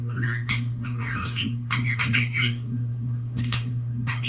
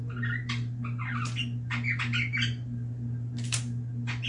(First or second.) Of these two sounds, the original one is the second